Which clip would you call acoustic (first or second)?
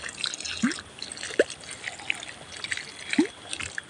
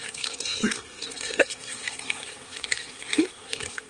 first